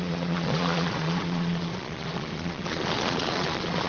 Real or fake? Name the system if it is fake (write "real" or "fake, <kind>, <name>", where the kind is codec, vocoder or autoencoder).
fake, vocoder, Vocos